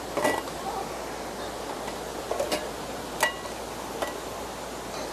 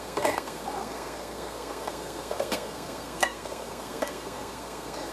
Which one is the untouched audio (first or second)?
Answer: first